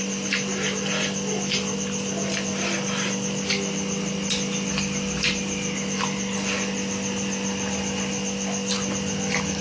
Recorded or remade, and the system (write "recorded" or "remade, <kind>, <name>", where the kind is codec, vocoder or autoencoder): recorded